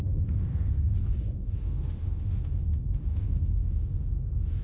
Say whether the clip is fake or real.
fake